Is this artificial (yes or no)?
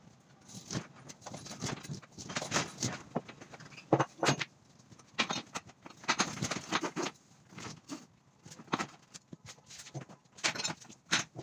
no